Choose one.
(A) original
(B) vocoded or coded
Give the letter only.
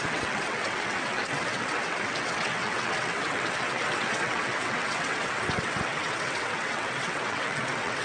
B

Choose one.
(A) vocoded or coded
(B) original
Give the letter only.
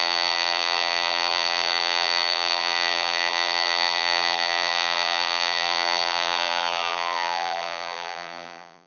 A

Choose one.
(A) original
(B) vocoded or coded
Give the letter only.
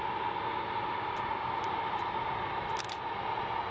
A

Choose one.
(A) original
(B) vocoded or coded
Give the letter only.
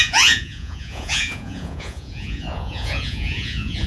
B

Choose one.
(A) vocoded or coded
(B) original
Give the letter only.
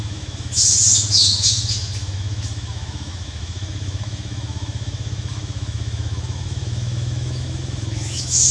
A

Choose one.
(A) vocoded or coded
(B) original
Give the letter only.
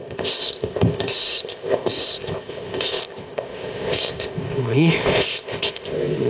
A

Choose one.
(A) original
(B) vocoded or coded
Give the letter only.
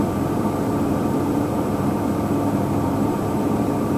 B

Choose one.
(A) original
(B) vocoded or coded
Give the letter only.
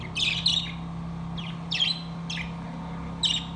A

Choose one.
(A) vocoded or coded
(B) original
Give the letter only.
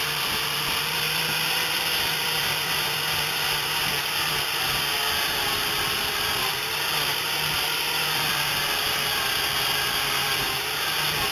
A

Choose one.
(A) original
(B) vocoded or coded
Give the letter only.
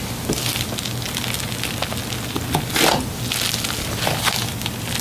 A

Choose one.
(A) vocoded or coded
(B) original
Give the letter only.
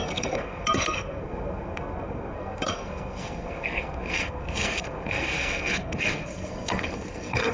A